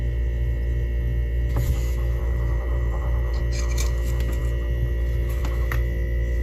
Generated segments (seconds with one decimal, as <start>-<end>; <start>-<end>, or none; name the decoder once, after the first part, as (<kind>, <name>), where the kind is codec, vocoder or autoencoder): 2.2-3.4 (vocoder, BigVGAN v2)